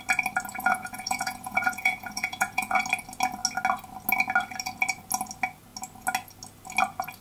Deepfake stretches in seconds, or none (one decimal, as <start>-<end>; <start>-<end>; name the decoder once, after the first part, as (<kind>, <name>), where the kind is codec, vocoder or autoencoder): 0.5-2.8 (vocoder, Vocos)